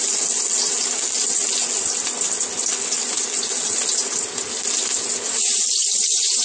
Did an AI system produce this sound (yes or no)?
no